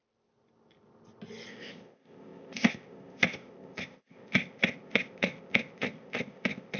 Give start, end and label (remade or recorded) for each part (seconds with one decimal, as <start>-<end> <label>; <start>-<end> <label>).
0.0-1.5 recorded; 1.5-6.8 remade